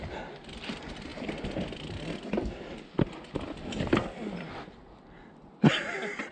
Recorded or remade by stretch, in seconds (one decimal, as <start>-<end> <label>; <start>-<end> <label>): 0.0-6.3 recorded